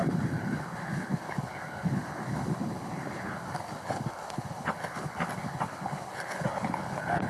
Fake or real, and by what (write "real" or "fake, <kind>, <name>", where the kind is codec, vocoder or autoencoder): fake, codec, HILCodec